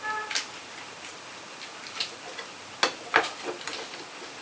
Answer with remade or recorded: recorded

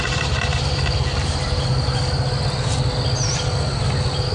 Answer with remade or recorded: recorded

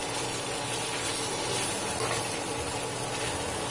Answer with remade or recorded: recorded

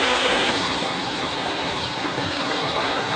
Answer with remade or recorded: remade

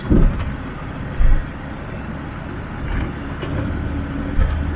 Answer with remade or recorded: recorded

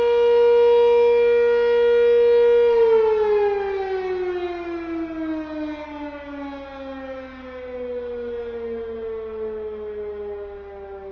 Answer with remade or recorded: recorded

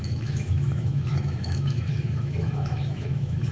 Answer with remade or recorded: remade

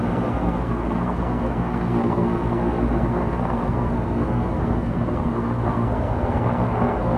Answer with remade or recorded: remade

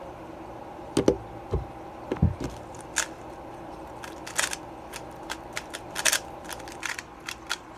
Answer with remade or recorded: recorded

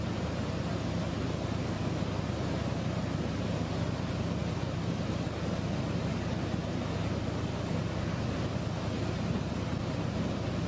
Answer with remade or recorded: recorded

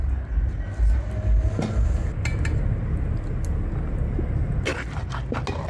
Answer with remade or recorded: recorded